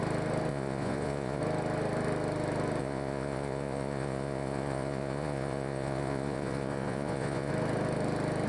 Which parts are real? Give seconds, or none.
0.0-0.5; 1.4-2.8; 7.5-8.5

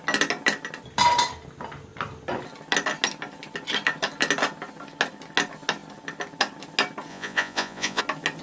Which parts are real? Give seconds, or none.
0.0-7.1; 8.0-8.4

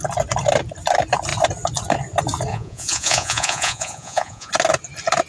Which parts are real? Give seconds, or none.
0.0-2.5; 4.5-5.3

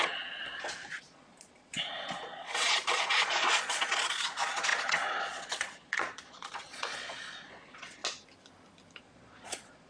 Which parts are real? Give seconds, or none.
0.4-0.9; 8.0-9.0

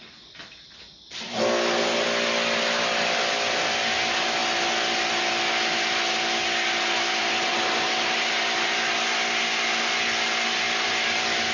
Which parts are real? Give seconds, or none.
0.0-11.5

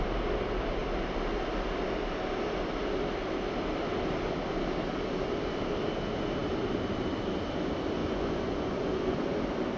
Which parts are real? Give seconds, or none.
0.0-8.0; 9.2-9.8

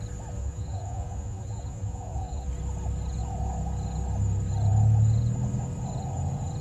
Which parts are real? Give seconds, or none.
0.0-0.4; 2.5-6.6